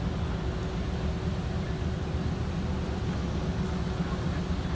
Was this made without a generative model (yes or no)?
yes